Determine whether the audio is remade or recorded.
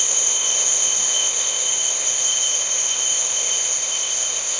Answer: remade